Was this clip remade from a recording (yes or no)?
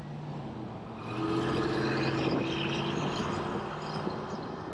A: no